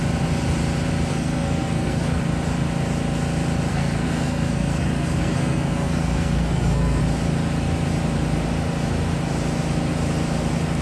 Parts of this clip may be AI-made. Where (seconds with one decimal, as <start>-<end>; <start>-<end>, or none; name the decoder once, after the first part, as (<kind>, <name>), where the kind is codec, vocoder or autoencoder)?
1.1-2.2 (codec, SNAC); 3.7-7.0